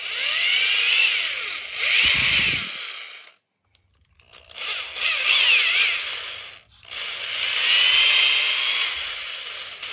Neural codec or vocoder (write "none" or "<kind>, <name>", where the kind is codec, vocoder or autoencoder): none